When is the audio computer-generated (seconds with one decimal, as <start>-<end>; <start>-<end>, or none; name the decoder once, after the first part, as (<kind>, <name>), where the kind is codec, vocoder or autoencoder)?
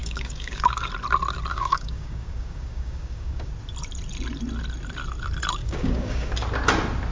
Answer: 0.0-0.9 (codec, DAC); 1.5-3.5; 5.6-6.3